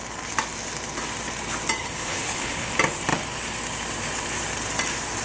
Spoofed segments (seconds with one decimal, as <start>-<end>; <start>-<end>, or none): 1.8-2.7